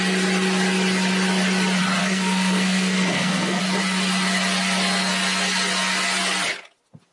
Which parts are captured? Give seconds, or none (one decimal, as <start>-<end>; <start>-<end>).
0.0-2.0; 3.6-7.1